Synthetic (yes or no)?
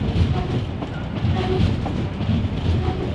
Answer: no